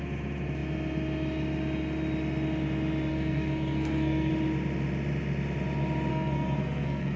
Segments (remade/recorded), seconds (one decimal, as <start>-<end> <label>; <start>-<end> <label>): 0.0-3.1 recorded; 3.1-4.3 remade; 4.3-6.1 recorded; 6.1-7.2 remade